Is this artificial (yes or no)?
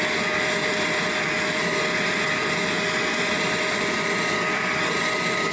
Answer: no